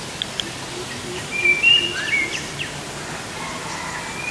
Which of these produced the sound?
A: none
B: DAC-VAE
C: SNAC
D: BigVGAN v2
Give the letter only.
A